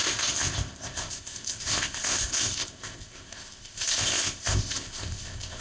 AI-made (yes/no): yes